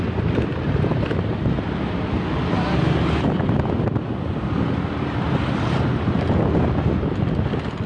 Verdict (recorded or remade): recorded